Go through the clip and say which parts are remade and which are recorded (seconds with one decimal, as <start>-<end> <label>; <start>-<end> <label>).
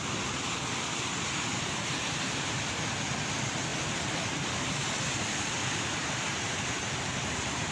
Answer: 0.0-5.6 recorded; 5.6-6.4 remade; 6.4-7.7 recorded